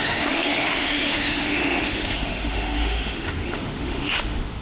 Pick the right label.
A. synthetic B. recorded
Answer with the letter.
A